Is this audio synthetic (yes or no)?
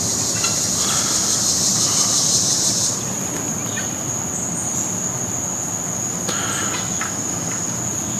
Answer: no